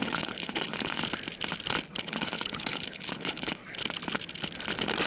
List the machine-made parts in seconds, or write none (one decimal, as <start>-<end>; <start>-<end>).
0.0-1.0; 2.0-3.6